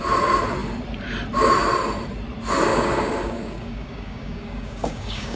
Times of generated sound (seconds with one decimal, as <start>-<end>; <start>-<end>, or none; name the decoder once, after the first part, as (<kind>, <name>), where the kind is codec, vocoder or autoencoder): 2.7-5.4 (codec, DAC)